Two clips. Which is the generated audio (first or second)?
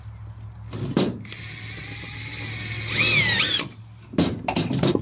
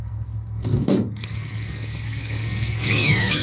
second